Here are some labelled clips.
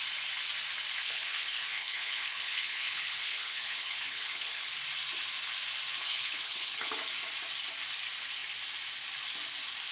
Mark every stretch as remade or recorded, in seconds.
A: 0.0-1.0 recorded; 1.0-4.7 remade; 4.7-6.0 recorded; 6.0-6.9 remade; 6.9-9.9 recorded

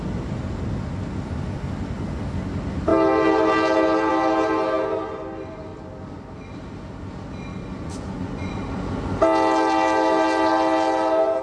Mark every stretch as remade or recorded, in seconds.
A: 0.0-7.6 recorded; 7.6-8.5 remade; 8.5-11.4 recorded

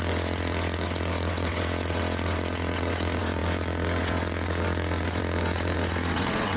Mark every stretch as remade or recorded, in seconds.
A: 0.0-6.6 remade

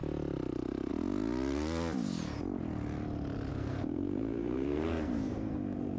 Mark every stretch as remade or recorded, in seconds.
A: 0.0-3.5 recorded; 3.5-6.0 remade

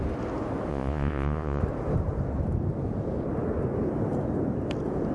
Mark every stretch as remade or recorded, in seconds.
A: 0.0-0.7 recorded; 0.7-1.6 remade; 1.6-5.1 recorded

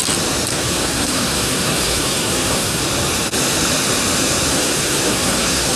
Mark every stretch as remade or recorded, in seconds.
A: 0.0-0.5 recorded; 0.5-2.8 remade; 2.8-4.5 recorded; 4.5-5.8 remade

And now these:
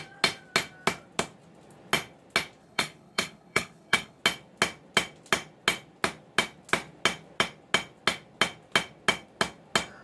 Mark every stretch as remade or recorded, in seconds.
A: 0.0-2.6 recorded; 2.6-4.2 remade; 4.2-10.0 recorded